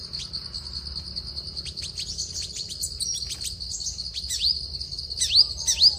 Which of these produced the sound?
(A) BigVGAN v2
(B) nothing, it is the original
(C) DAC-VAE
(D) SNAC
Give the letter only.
B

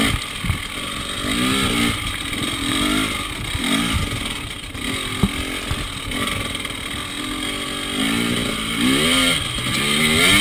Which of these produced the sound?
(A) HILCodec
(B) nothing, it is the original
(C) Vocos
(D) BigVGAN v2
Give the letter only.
B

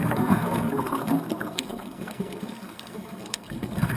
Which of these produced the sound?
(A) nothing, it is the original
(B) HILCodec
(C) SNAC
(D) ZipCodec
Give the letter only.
C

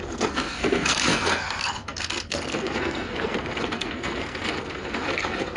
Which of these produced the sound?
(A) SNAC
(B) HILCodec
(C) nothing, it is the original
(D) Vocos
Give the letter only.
A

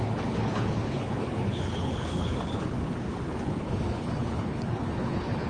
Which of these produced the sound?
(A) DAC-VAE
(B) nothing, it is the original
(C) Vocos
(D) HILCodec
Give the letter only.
D